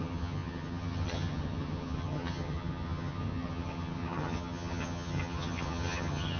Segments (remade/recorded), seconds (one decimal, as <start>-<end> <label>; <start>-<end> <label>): 0.0-6.4 remade